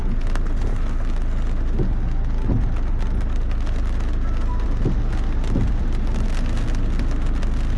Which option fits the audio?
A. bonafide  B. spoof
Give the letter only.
A